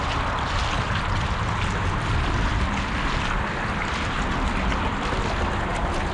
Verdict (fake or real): real